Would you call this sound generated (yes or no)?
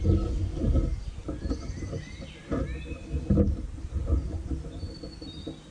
no